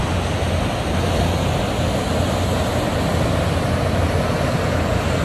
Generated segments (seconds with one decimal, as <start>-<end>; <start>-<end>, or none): none